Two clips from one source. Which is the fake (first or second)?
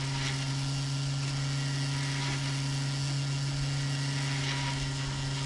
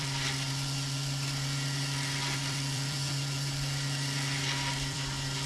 second